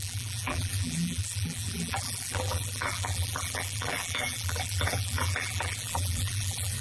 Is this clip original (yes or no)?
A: no